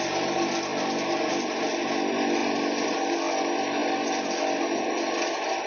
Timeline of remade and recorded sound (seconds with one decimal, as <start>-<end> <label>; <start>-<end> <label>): 0.0-5.7 recorded